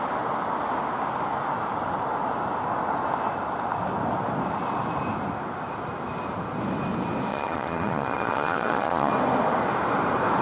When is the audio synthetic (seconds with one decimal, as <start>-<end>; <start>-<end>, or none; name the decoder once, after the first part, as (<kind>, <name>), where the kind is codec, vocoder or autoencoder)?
7.3-9.1 (vocoder, Vocos)